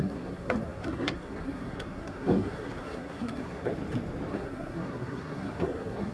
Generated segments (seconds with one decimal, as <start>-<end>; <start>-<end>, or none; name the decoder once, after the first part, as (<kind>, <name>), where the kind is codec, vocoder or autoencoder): 0.0-3.7 (codec, SNAC); 4.3-6.1